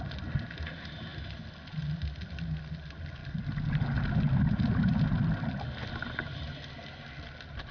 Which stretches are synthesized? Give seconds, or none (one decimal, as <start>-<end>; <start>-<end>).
none